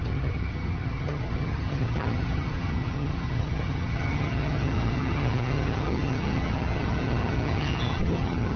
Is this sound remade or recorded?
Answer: remade